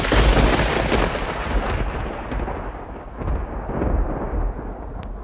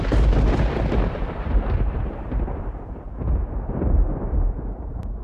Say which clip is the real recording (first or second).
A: first